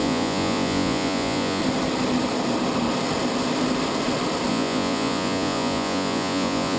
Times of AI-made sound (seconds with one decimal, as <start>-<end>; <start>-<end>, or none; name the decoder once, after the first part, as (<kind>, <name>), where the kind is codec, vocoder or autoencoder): 0.0-1.6 (vocoder, Vocos); 4.5-6.8